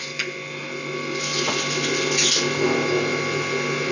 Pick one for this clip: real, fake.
real